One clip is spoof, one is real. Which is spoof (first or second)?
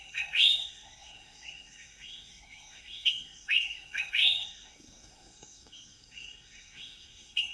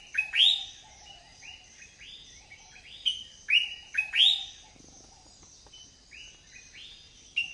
first